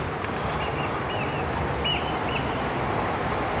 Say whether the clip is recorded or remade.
recorded